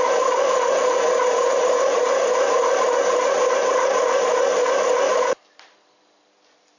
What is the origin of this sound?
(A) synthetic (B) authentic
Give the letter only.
B